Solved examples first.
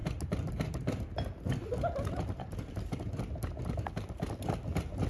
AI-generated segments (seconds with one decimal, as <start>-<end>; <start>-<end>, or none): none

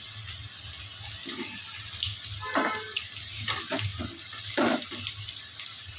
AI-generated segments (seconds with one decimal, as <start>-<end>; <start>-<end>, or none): none

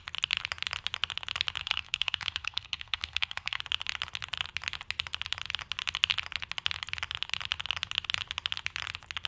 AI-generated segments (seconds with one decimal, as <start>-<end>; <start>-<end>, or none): 1.6-3.6